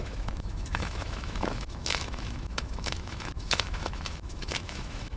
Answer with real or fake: fake